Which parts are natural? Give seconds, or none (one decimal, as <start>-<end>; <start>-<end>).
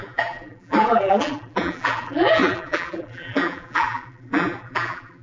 none